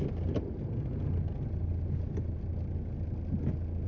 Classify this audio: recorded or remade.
recorded